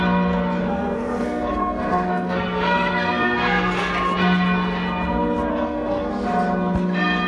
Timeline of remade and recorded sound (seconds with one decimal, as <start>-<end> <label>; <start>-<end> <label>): 0.0-0.6 recorded; 0.6-3.9 remade; 3.9-5.5 recorded; 5.5-6.1 remade; 6.1-7.3 recorded